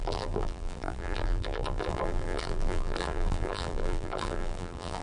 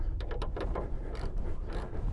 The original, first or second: second